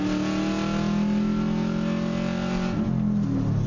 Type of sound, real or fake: real